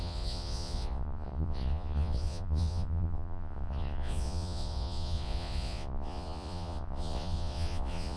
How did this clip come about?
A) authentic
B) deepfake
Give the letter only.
B